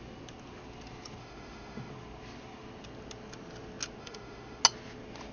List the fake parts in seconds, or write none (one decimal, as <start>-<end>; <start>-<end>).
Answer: 1.2-1.9; 4.0-4.6